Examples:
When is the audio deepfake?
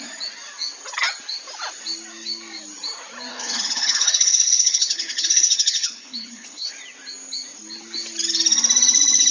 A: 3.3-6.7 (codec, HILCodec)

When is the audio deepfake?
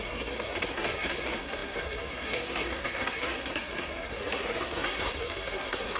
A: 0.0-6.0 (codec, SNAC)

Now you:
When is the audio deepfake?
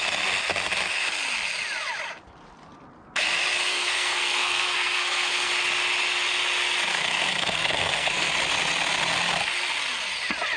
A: 3.7-5.5 (codec, SNAC); 6.9-8.3